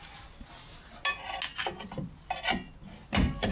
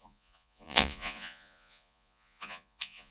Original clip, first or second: first